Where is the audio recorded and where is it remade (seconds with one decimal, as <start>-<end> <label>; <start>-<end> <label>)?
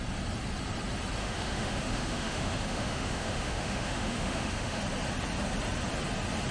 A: 0.0-1.2 recorded; 1.2-4.8 remade; 4.8-6.5 recorded